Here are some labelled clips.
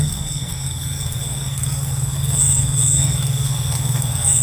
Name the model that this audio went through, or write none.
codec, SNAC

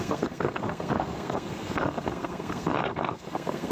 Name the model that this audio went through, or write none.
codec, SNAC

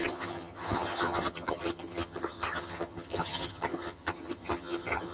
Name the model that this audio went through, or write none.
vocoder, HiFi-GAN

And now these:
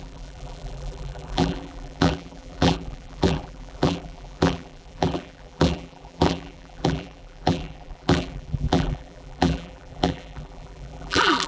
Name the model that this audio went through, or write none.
vocoder, BigVGAN v2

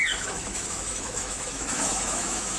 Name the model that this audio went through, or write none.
autoencoder, DAC-VAE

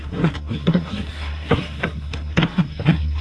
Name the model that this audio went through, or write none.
codec, SNAC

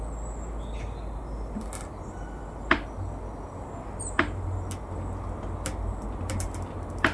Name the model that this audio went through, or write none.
none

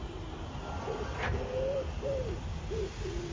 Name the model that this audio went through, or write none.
none